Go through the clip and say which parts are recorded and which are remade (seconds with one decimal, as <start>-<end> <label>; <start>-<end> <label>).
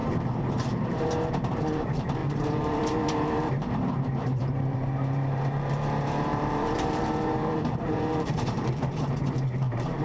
0.0-10.0 remade